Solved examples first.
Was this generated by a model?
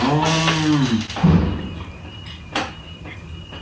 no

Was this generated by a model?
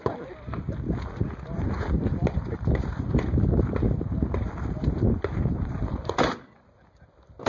no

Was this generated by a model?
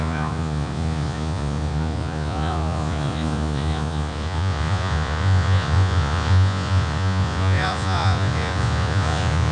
yes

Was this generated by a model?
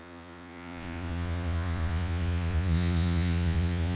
yes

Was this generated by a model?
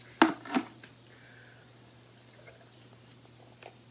no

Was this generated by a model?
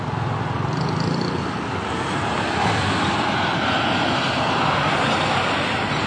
no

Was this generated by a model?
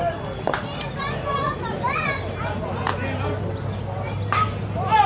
no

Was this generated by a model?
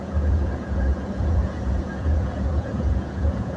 yes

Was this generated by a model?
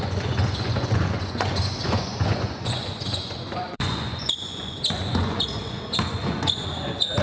yes